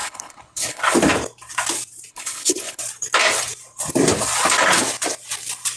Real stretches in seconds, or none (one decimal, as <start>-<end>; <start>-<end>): 0.8-2.1; 2.8-5.8